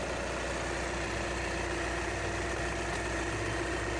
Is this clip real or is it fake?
real